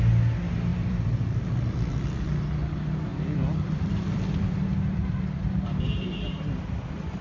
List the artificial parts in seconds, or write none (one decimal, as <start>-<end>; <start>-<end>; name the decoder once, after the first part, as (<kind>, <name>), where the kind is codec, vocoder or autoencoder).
0.7-1.4 (vocoder, BigVGAN v2); 3.1-6.6